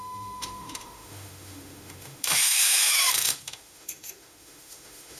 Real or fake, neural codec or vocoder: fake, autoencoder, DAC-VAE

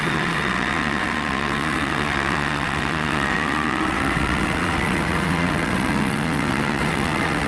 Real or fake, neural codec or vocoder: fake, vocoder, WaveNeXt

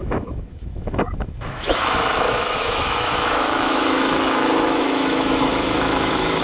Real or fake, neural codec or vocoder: fake, autoencoder, DAC-VAE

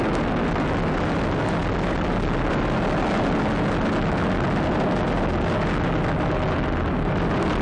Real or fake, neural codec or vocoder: real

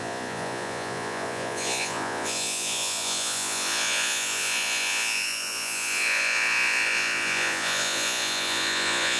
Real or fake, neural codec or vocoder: fake, vocoder, Vocos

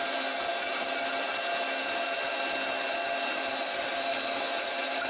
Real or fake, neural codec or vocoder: real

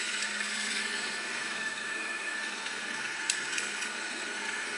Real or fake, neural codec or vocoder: fake, codec, SNAC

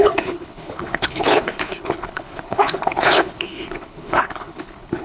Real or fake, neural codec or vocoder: fake, codec, HILCodec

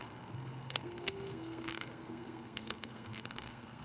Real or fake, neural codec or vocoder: fake, codec, SNAC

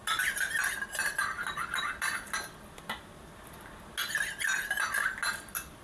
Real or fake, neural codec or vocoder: real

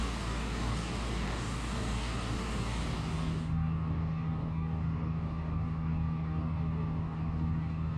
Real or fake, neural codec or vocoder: fake, codec, DAC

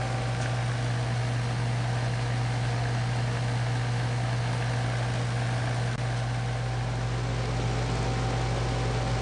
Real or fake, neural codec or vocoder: real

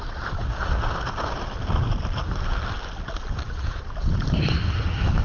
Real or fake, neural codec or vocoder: real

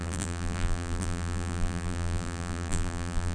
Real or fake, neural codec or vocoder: fake, vocoder, BigVGAN v2